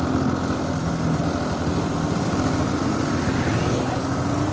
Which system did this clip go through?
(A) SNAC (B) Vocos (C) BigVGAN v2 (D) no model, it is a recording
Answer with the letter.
D